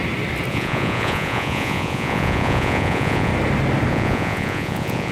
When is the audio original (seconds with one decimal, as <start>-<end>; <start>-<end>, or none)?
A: 0.0-0.5; 3.3-3.9